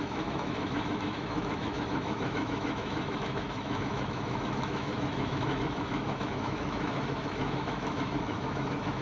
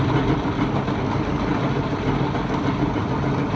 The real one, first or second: second